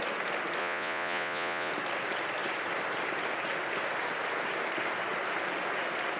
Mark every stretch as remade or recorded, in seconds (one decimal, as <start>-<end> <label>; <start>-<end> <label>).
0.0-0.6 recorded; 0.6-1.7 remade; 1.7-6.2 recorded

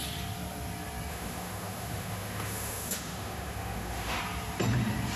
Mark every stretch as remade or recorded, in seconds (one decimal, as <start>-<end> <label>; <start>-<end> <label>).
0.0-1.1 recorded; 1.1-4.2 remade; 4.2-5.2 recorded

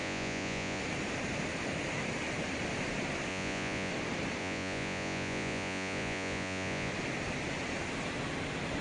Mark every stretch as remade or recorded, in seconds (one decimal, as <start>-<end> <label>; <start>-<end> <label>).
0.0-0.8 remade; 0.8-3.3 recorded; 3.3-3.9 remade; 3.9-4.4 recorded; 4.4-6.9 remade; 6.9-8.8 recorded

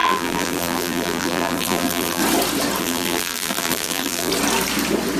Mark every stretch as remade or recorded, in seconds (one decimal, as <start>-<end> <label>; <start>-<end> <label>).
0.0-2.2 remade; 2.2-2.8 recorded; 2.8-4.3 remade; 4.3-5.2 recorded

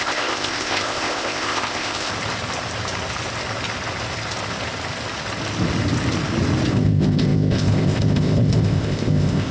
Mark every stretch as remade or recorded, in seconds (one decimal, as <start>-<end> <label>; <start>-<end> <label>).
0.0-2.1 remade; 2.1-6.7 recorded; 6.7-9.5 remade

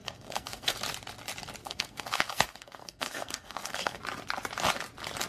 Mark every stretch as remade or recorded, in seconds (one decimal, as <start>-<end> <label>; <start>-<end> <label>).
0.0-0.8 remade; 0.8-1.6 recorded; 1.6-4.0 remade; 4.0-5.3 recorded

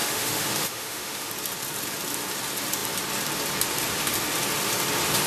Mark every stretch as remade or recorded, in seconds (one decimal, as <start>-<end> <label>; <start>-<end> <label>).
0.0-1.3 remade; 1.3-5.3 recorded